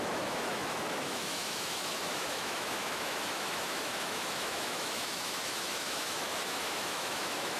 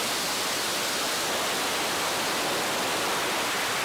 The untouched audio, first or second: second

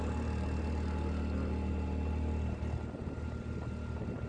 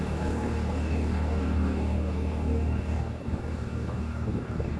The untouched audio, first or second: first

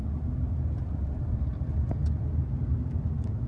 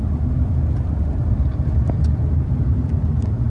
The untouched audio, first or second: first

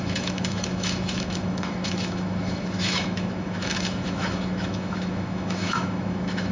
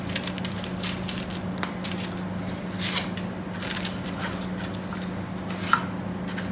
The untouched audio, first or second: second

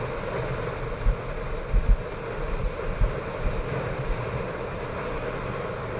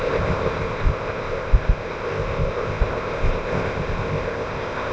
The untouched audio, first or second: first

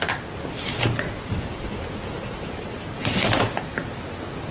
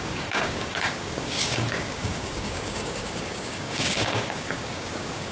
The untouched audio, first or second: first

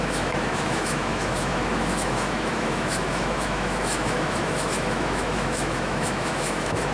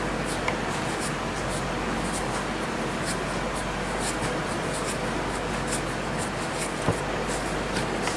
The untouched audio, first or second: second